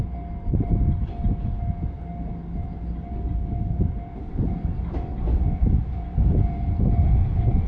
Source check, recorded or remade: recorded